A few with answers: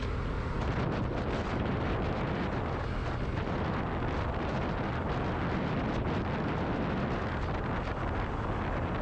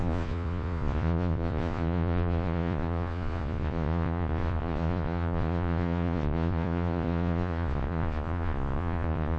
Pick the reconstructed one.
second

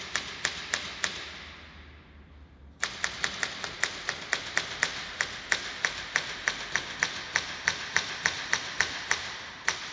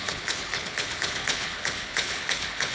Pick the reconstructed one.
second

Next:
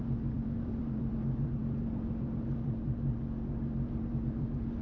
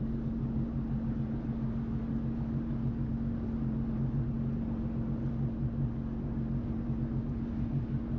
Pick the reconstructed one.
first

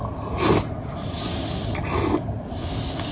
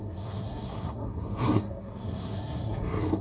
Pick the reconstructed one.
second